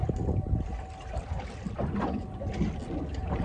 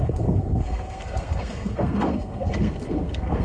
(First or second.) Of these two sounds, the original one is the first